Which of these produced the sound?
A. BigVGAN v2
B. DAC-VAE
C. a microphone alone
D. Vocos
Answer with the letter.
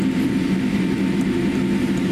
C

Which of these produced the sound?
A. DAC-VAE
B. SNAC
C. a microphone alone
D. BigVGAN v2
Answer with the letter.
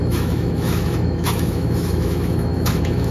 A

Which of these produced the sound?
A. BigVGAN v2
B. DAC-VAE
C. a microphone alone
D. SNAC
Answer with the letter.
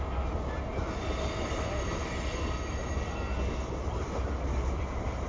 C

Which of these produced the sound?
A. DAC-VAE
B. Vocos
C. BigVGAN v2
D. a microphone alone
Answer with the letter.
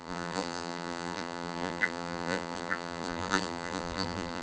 C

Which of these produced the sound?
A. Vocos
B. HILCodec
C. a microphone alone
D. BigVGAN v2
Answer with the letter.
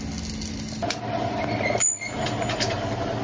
C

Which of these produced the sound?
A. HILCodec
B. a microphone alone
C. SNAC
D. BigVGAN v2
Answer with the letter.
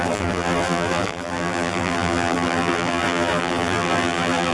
D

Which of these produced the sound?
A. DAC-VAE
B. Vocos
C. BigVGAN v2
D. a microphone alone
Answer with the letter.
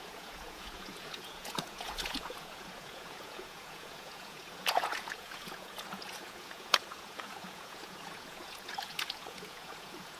B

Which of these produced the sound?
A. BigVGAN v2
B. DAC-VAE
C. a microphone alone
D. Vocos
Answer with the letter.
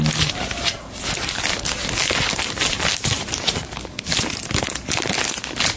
C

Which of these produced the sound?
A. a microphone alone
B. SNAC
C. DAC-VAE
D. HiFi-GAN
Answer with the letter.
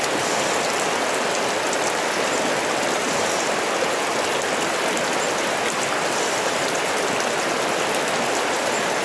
A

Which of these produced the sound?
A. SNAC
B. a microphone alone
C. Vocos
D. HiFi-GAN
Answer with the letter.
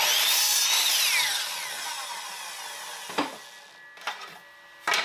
B